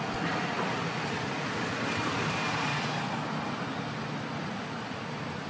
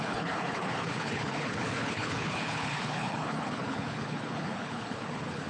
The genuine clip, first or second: first